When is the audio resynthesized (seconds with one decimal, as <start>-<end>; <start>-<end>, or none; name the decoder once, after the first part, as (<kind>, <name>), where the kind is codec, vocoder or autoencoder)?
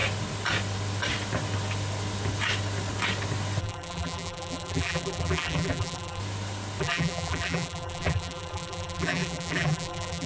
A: 3.6-6.2 (vocoder, BigVGAN v2); 6.8-10.3